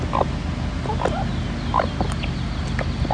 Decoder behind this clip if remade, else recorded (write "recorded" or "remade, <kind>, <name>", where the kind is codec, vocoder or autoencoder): recorded